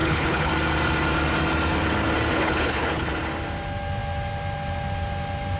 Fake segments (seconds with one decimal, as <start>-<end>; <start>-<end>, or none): 0.0-0.5; 2.3-3.1